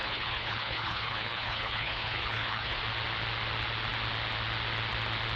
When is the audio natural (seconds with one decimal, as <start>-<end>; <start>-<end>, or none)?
2.8-5.4